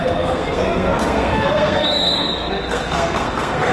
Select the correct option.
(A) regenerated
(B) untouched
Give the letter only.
A